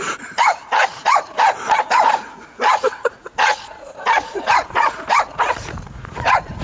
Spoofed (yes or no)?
yes